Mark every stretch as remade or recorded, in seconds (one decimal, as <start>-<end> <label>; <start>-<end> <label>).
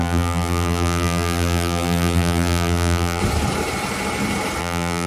0.0-3.2 remade; 3.2-4.6 recorded; 4.6-5.1 remade